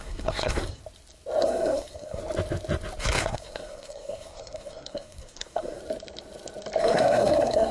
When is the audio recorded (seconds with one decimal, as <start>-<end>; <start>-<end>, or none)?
0.8-1.4; 2.2-3.0; 5.8-6.8